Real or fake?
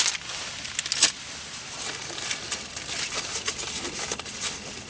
real